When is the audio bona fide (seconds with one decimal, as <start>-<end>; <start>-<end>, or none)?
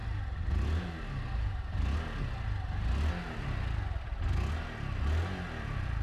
0.0-6.0